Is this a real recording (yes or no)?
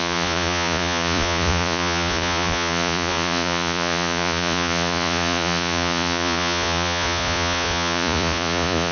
no